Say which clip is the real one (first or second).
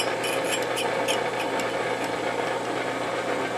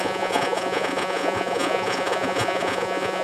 first